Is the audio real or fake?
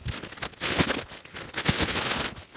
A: real